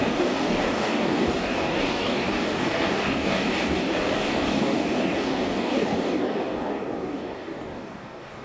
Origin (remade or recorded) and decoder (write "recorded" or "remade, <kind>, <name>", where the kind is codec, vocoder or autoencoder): remade, codec, DAC